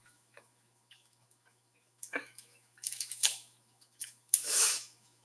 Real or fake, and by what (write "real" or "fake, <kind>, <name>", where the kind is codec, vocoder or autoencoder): fake, autoencoder, DAC-VAE